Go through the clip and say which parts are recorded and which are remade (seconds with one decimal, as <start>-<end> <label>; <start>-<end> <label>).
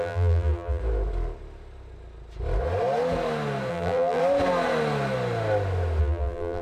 0.0-0.8 remade; 0.8-3.7 recorded; 3.7-4.2 remade; 4.2-6.0 recorded; 6.0-6.6 remade